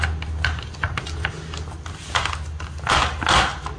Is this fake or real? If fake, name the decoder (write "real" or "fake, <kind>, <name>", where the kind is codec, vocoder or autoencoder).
real